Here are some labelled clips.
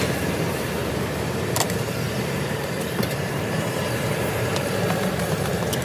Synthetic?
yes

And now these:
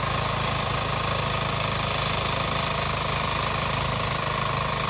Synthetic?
no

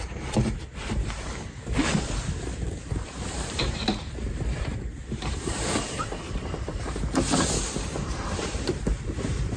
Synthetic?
yes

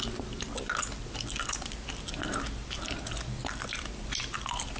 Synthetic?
no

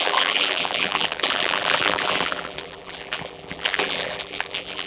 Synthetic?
yes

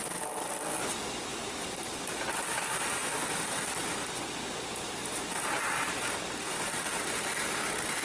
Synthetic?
no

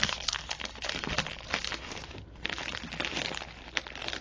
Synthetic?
no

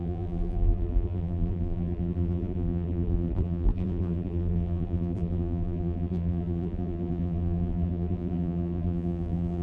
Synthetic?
yes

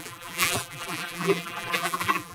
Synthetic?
yes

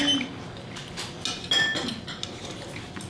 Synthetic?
no